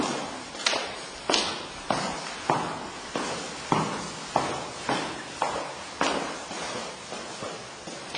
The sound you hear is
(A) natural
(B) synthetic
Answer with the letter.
A